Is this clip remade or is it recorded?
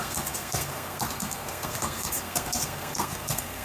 remade